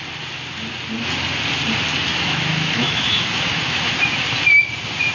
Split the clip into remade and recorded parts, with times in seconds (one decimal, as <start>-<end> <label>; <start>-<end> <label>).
0.0-2.1 recorded; 2.1-3.9 remade; 3.9-5.1 recorded